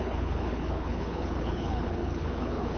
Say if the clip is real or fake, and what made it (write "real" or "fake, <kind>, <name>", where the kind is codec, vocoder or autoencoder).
fake, codec, HILCodec